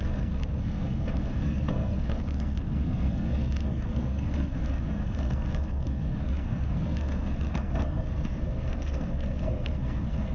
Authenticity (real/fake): fake